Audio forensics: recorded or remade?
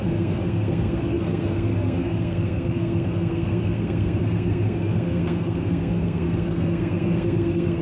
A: remade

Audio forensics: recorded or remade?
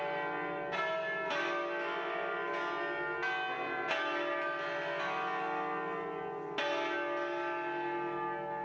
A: recorded